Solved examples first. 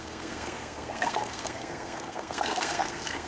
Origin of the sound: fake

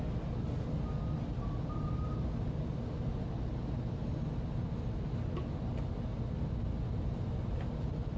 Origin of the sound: real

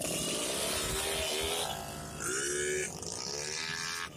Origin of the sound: real